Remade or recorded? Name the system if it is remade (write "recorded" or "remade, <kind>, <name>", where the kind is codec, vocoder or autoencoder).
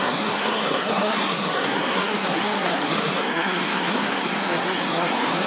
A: remade, codec, SNAC